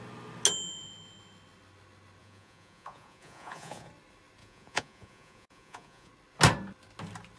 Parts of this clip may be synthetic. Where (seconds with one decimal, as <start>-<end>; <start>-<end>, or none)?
2.2-3.9; 4.4-6.1